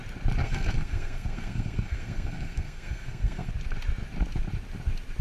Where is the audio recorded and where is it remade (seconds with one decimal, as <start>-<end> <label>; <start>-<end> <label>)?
0.0-0.4 recorded; 0.4-3.5 remade; 3.5-5.2 recorded